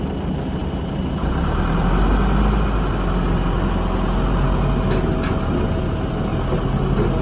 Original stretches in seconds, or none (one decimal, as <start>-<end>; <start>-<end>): 0.0-7.2